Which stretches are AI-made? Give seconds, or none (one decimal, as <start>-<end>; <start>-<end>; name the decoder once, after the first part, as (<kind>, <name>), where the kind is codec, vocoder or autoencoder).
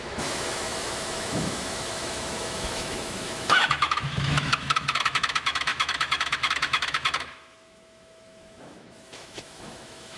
0.0-10.2 (autoencoder, DAC-VAE)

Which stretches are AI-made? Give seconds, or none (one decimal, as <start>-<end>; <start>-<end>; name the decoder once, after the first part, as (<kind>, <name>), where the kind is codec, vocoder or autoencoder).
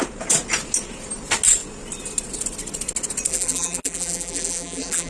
3.3-5.1 (vocoder, BigVGAN v2)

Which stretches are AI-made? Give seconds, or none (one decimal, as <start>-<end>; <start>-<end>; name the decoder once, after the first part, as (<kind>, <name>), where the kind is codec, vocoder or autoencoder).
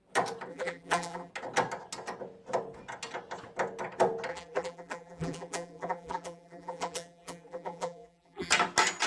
0.5-1.3 (vocoder, BigVGAN v2); 4.3-8.5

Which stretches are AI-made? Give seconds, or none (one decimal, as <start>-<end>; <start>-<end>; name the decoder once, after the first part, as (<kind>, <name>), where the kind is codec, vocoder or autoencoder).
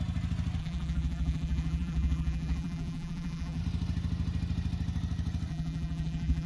0.6-3.6 (vocoder, BigVGAN v2); 5.5-6.5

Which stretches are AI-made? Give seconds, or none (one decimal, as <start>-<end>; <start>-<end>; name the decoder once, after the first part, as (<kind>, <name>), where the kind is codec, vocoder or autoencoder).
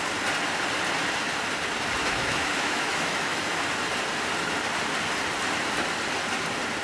2.0-3.6 (autoencoder, DAC-VAE)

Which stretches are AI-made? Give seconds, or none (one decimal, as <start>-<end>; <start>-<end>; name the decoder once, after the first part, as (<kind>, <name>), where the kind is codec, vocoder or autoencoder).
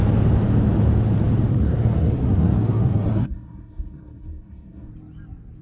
1.5-4.9 (codec, SNAC)